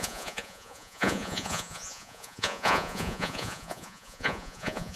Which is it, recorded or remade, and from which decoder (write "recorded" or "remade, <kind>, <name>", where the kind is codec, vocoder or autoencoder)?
remade, vocoder, Vocos